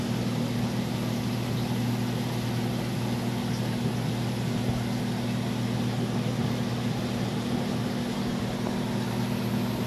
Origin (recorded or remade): recorded